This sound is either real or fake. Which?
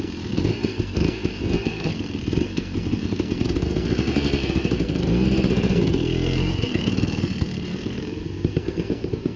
fake